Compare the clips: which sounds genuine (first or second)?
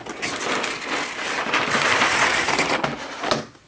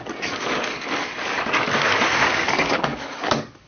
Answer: first